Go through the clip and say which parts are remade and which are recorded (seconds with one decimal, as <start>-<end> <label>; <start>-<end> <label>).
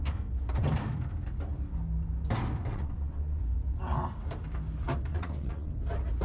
0.0-2.7 recorded; 2.7-3.4 remade; 3.4-5.1 recorded; 5.1-5.7 remade; 5.7-6.2 recorded